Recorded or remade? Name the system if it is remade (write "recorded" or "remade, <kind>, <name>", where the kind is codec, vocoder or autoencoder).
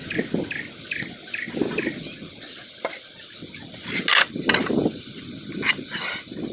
recorded